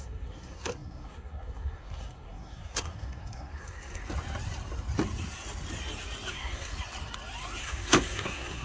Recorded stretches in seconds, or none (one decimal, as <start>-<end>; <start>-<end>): 4.0-6.3; 6.7-7.6